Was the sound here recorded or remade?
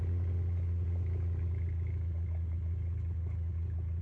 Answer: recorded